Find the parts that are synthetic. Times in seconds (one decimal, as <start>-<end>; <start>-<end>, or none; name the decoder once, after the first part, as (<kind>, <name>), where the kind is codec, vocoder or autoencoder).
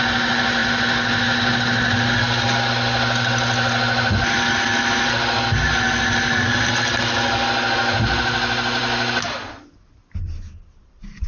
none